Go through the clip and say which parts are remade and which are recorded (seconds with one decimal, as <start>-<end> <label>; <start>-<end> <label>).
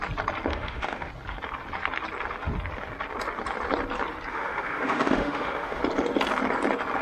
0.0-0.5 recorded; 0.5-1.1 remade; 1.1-4.3 recorded; 4.3-5.8 remade; 5.8-7.0 recorded